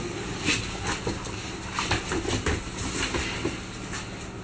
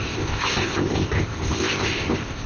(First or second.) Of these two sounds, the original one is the first